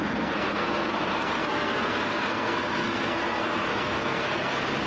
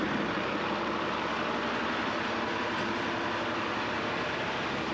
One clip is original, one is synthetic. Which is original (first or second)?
second